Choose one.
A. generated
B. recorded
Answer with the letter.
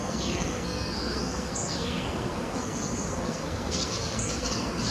A